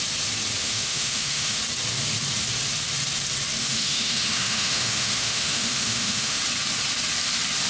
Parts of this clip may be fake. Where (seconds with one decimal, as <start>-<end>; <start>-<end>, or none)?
0.6-1.6; 3.6-6.4